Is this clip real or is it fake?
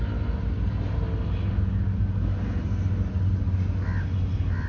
real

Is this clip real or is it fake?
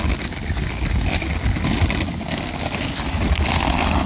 real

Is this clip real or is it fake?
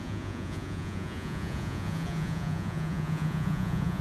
fake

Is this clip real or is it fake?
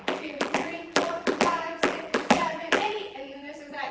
fake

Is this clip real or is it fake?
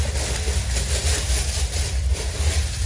real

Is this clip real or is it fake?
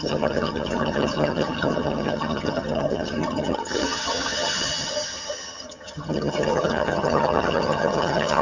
fake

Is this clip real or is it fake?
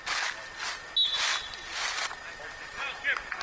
real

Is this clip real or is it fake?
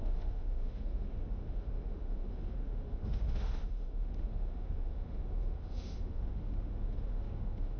fake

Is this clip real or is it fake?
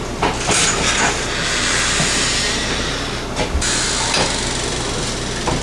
real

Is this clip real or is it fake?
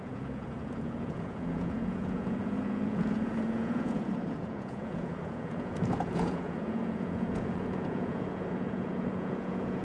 fake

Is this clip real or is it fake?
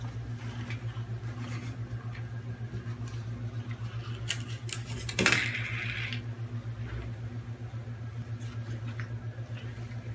real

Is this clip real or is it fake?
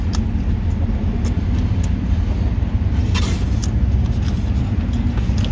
real